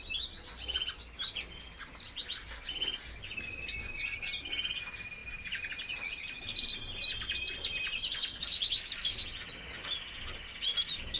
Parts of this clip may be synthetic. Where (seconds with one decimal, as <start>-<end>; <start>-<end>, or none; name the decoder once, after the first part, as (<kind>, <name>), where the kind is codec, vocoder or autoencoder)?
none